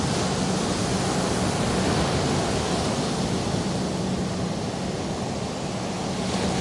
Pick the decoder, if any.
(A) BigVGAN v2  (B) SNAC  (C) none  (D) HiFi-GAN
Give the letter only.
C